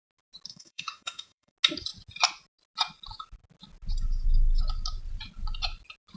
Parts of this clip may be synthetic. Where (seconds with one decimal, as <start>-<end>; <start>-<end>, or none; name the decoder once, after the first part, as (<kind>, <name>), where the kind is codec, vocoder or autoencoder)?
0.5-1.5 (autoencoder, DAC-VAE)